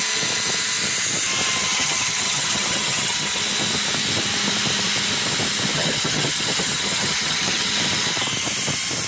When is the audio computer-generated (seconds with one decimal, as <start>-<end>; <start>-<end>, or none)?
1.6-3.4; 5.7-7.7